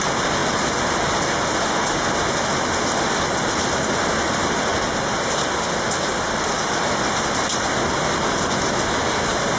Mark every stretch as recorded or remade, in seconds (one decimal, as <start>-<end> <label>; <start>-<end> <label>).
0.0-9.6 recorded